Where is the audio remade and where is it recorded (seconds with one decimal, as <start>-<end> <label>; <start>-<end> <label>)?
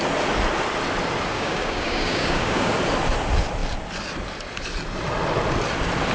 0.0-1.3 recorded; 1.3-2.7 remade; 2.7-6.1 recorded